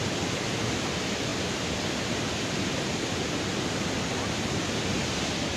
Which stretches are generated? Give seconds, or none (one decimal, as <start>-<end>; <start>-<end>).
none